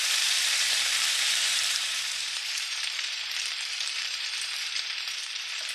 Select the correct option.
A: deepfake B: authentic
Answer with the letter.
A